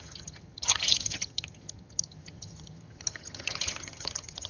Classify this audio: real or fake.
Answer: fake